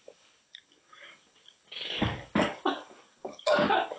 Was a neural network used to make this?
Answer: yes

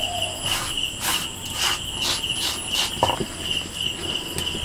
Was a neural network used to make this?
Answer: no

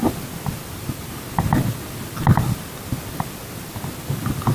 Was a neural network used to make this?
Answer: no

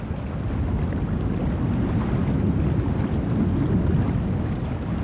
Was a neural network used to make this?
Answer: no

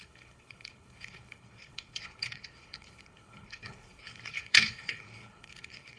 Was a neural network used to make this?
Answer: yes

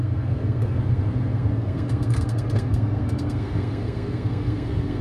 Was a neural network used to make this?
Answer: yes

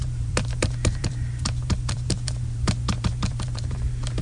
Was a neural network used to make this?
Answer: yes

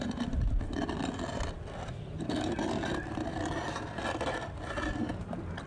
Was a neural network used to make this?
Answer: no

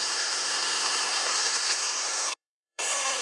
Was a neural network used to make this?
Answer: yes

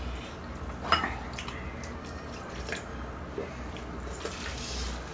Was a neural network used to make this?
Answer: no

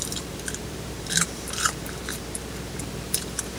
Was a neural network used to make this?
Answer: yes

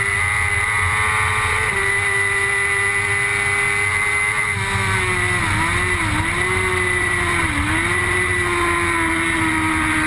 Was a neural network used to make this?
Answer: no